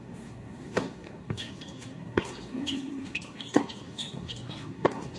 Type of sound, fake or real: fake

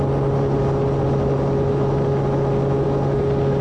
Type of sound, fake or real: real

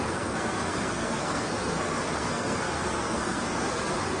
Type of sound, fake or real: fake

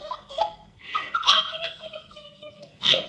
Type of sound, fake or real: fake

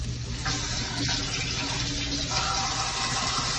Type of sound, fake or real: real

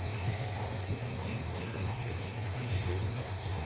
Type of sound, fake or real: fake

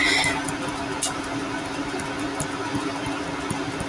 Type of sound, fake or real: real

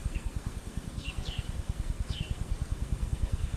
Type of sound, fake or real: fake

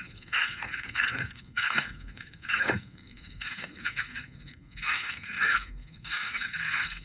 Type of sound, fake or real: fake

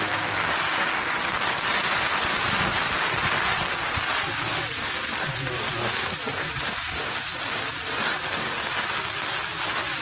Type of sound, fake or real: real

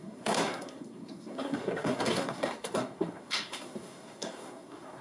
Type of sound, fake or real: fake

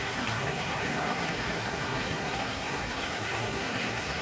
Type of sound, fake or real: fake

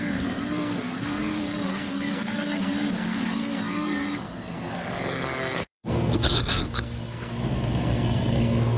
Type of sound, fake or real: fake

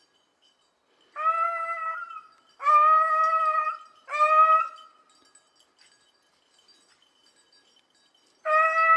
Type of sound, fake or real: real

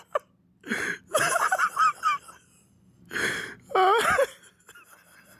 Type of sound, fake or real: real